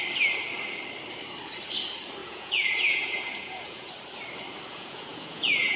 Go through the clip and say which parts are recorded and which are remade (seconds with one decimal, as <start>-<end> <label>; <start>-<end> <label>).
0.0-2.2 recorded; 2.2-3.9 remade; 3.9-4.7 recorded; 4.7-5.8 remade